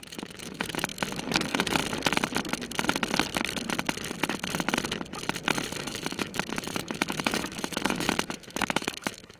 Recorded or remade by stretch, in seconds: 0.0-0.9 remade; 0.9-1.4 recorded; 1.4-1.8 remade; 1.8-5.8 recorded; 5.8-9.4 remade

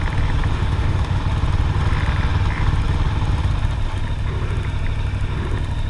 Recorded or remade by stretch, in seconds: 0.0-0.5 recorded; 0.5-1.2 remade; 1.2-5.9 recorded

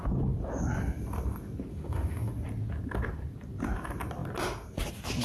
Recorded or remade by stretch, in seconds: 0.0-1.7 recorded; 1.7-2.3 remade; 2.3-5.2 recorded